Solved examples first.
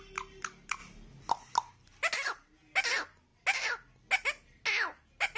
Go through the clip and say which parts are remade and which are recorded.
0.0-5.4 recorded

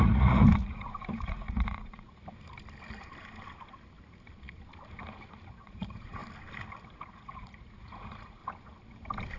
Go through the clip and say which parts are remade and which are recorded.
0.0-2.2 remade; 2.2-5.5 recorded; 5.5-6.2 remade; 6.2-7.1 recorded; 7.1-8.4 remade; 8.4-9.4 recorded

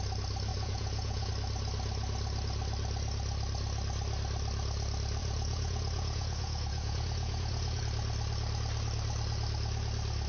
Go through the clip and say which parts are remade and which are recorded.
0.0-0.5 recorded; 0.5-1.3 remade; 1.3-5.2 recorded; 5.2-7.8 remade; 7.8-10.3 recorded

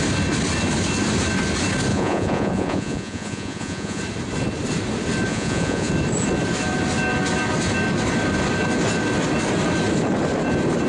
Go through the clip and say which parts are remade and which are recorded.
0.0-1.9 recorded; 1.9-4.0 remade; 4.0-5.3 recorded; 5.3-5.9 remade; 5.9-10.9 recorded

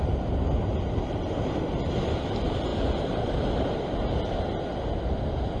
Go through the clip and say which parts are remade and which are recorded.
0.0-5.6 recorded